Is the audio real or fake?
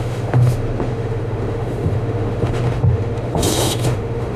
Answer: fake